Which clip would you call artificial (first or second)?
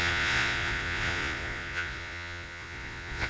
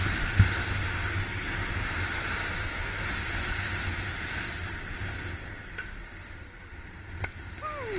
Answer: first